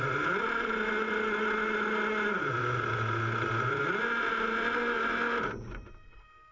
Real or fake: real